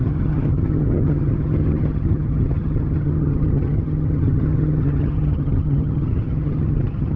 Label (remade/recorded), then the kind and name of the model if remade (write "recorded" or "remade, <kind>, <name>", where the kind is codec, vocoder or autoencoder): remade, vocoder, HiFi-GAN